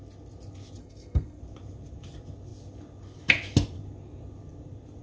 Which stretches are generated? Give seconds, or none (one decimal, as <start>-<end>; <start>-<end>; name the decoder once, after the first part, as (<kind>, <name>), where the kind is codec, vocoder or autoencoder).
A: 0.8-1.4 (codec, SNAC)